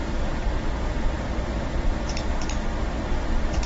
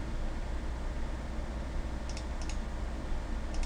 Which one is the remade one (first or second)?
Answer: first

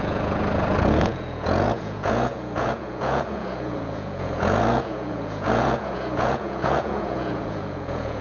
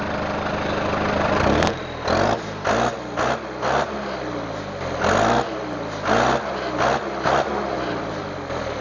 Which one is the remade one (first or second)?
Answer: first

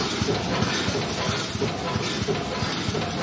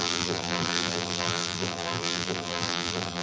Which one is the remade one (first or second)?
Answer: second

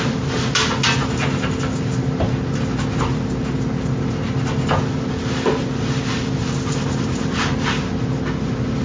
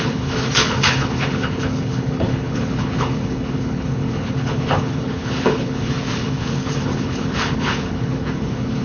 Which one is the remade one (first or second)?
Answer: second